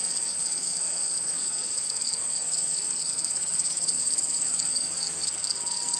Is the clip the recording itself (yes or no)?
no